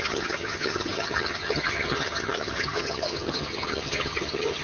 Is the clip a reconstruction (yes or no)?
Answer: yes